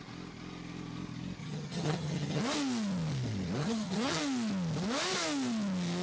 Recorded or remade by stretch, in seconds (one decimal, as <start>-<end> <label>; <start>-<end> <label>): 0.0-1.4 recorded; 1.4-2.4 remade; 2.4-3.6 recorded; 3.6-4.2 remade; 4.2-6.0 recorded